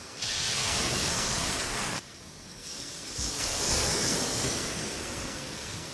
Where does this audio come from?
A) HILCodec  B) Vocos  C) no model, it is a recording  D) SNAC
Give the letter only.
D